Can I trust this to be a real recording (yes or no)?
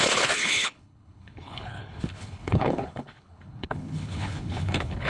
no